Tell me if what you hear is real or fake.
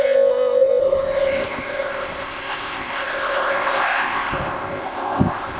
fake